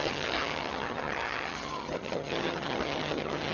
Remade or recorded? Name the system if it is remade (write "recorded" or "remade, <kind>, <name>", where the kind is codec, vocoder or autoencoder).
remade, vocoder, HiFi-GAN